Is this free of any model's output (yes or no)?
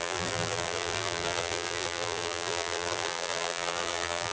no